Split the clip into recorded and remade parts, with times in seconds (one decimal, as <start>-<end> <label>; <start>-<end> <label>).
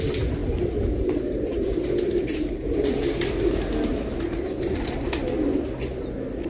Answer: 0.0-6.5 recorded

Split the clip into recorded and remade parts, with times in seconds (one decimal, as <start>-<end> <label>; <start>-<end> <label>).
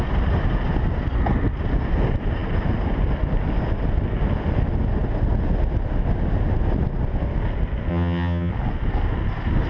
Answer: 0.0-7.9 recorded; 7.9-8.5 remade; 8.5-9.7 recorded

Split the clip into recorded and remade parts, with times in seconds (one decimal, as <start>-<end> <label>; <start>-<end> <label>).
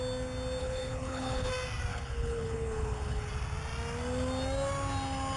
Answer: 0.0-0.6 recorded; 0.6-1.5 remade; 1.5-1.9 recorded; 1.9-3.3 remade; 3.3-5.4 recorded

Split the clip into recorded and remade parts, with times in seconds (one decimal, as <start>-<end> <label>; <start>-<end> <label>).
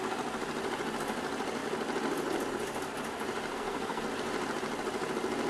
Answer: 0.0-3.5 recorded; 3.5-4.0 remade; 4.0-5.5 recorded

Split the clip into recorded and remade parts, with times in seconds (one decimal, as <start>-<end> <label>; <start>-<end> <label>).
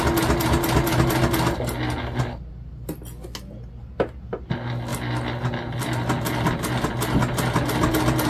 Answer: 0.0-8.3 recorded